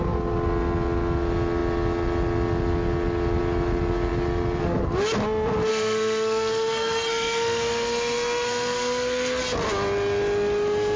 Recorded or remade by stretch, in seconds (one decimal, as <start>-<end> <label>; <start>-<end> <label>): 0.0-5.7 recorded; 5.7-9.4 remade; 9.4-11.0 recorded